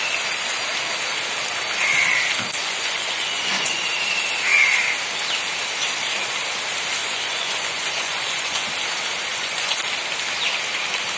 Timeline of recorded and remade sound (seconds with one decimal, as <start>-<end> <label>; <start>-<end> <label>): 0.0-2.6 recorded; 2.6-3.8 remade; 3.8-7.0 recorded; 7.0-8.7 remade; 8.7-9.3 recorded; 9.3-9.8 remade; 9.8-11.2 recorded